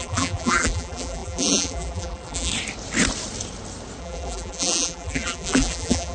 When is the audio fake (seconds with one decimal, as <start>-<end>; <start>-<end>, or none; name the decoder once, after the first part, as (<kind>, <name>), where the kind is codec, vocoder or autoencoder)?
0.0-2.5 (vocoder, BigVGAN v2); 4.0-6.1